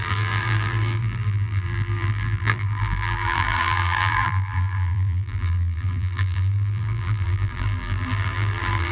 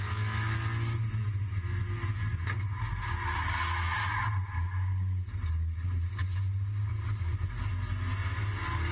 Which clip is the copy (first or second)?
first